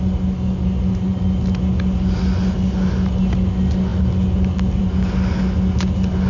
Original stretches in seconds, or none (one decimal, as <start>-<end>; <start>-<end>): 0.0-6.3